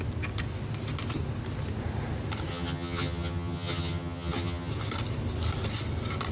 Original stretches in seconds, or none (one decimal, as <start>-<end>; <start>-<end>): 0.0-2.5; 4.7-6.3